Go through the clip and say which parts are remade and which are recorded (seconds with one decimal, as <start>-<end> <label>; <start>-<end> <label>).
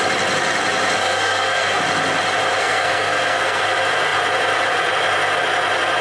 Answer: 0.0-1.0 recorded; 1.0-1.8 remade; 1.8-2.6 recorded; 2.6-3.6 remade; 3.6-6.0 recorded